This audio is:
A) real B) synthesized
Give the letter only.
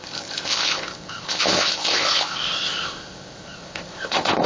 B